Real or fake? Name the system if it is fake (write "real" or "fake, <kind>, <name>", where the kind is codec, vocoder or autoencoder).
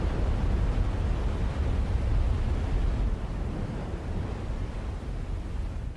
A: real